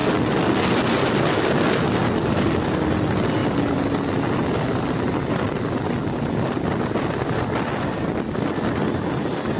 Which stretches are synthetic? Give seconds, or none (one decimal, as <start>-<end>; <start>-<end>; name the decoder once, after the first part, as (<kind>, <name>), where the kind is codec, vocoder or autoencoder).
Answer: none